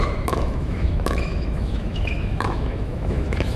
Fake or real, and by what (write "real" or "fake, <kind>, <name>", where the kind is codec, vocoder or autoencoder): fake, autoencoder, DAC-VAE